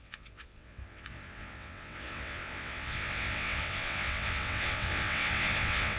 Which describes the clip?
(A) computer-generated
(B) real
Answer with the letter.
A